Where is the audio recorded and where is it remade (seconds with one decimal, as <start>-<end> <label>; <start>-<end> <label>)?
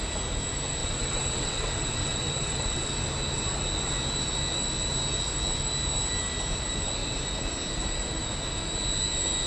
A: 0.0-0.8 recorded; 0.8-2.8 remade; 2.8-9.5 recorded